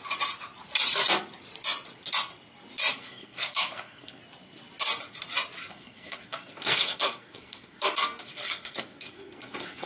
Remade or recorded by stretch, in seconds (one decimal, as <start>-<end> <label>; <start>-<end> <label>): 0.0-2.9 recorded; 2.9-4.2 remade; 4.2-5.6 recorded; 5.6-9.9 remade